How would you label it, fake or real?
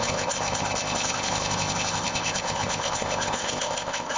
fake